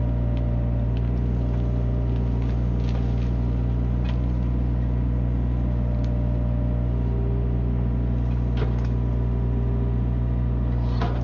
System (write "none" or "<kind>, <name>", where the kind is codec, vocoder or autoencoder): none